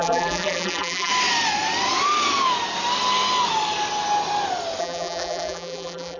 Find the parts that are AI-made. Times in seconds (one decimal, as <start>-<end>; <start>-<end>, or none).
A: 0.0-1.1; 4.8-6.2